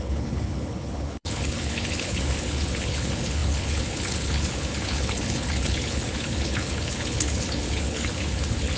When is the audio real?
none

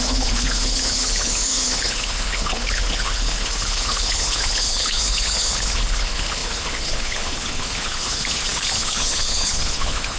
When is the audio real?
none

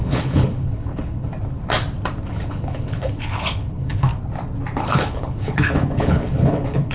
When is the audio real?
1.3-2.3; 4.1-4.8

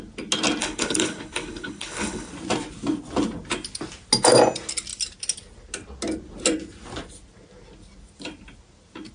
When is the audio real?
0.0-0.6; 2.3-9.1

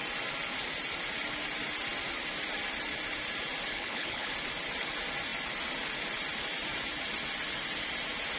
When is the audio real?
0.0-3.7; 4.3-8.4

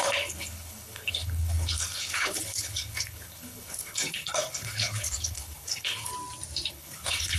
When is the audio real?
6.1-6.7

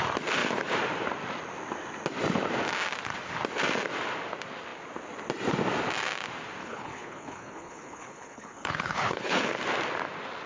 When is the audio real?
0.0-6.6; 9.4-10.5

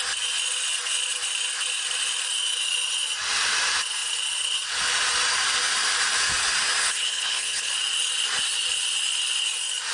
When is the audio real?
0.0-6.8; 7.7-9.9